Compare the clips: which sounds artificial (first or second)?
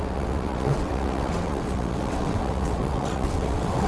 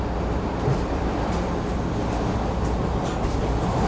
first